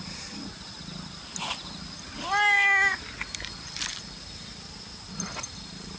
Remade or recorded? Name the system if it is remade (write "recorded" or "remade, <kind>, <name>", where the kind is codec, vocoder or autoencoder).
recorded